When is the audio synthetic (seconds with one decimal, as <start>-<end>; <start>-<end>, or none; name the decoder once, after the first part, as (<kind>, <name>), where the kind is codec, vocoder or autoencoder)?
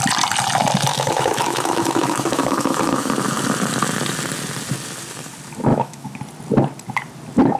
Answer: 0.9-3.1 (autoencoder, DAC-VAE); 5.7-6.2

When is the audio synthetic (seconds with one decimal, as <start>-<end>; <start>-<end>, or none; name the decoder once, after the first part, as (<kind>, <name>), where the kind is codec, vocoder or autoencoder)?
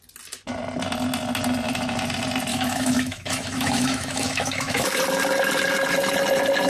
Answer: 2.5-5.0 (autoencoder, DAC-VAE)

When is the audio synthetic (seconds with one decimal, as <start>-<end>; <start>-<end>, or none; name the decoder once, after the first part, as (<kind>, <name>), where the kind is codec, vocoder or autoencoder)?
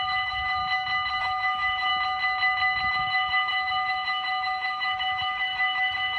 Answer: 0.0-0.6 (autoencoder, DAC-VAE); 1.2-1.9; 2.9-6.2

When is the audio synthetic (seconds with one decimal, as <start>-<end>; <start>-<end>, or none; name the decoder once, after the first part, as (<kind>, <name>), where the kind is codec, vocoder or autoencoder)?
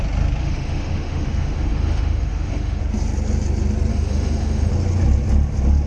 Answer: 0.4-2.8 (autoencoder, DAC-VAE); 3.9-4.7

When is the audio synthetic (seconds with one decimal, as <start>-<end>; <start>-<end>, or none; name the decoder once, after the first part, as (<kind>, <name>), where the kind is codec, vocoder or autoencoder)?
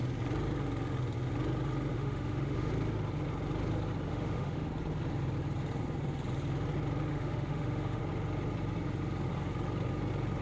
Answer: 1.9-2.7 (autoencoder, DAC-VAE); 4.1-4.7; 7.1-8.0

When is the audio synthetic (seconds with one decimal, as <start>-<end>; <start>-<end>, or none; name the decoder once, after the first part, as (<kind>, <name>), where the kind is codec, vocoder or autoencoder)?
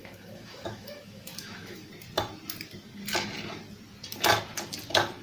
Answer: 0.0-1.9 (autoencoder, DAC-VAE)